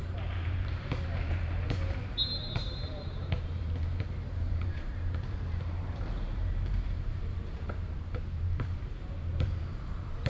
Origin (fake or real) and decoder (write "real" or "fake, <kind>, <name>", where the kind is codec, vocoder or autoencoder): fake, vocoder, BigVGAN v2